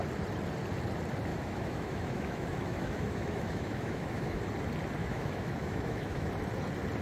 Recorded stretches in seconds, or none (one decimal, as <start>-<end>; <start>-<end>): 0.0-1.3; 4.4-5.0; 6.3-7.0